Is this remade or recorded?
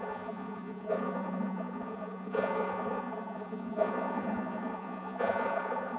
remade